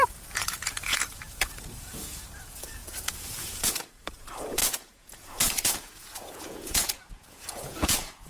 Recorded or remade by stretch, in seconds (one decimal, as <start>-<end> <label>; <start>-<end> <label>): 0.0-8.3 remade